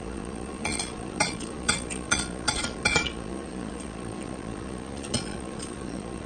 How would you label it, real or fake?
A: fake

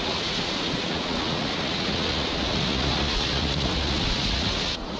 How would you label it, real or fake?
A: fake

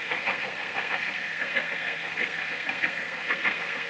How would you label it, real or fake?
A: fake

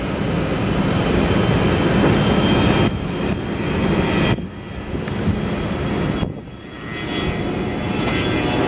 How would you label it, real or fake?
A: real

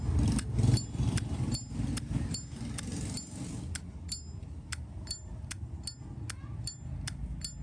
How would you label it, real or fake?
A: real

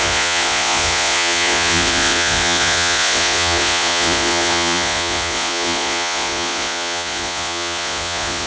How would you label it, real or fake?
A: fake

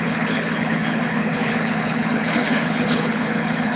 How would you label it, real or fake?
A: fake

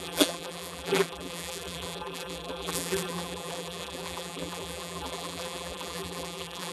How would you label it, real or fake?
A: fake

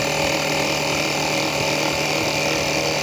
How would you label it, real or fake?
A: real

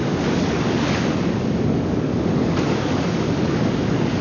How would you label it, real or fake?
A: fake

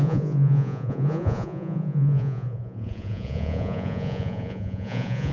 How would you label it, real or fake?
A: fake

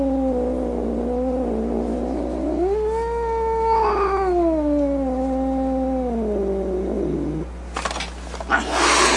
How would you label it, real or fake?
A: real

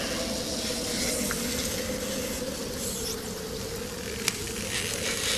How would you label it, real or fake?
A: real